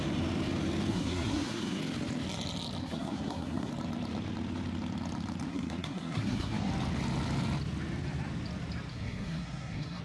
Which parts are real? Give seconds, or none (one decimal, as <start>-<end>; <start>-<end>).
0.0-0.9; 1.8-2.8; 3.7-5.5; 6.7-8.9